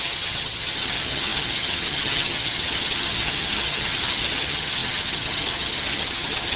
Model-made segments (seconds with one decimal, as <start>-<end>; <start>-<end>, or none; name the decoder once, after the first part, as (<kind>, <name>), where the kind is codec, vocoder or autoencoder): 0.0-6.6 (vocoder, HiFi-GAN)